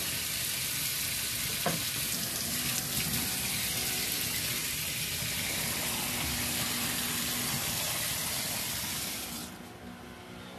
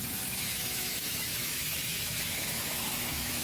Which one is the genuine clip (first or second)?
first